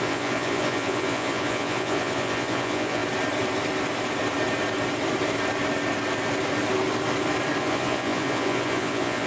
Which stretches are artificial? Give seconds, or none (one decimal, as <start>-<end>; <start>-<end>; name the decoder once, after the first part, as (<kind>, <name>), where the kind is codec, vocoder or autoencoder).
0.0-3.0 (vocoder, Vocos); 7.6-9.3